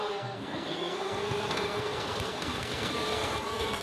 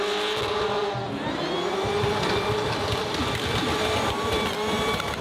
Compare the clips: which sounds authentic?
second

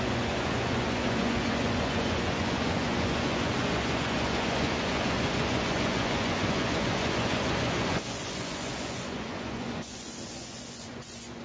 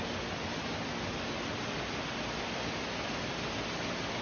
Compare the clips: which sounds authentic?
second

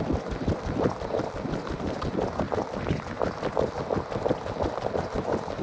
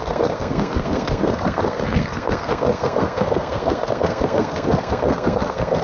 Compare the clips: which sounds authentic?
first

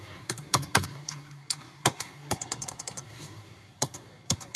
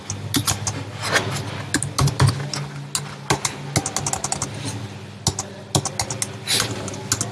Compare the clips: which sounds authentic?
second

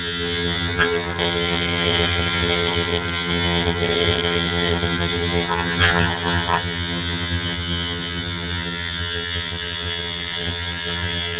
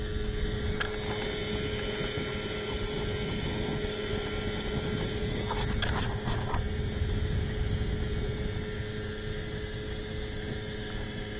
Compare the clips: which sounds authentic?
second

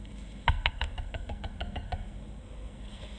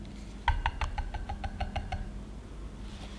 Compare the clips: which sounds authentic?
second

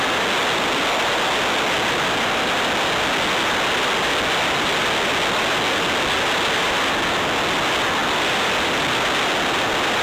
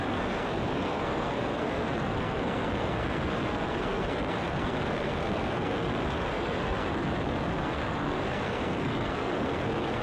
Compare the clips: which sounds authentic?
first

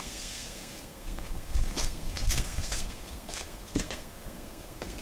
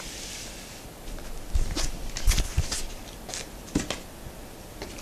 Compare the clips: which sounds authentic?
second